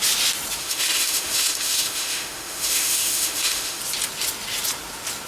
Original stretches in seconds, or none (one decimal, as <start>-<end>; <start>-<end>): 0.0-0.6; 3.8-5.3

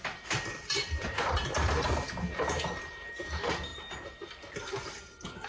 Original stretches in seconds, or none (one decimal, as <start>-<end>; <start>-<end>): 3.7-4.5